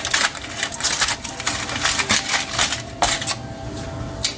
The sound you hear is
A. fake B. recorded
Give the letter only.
B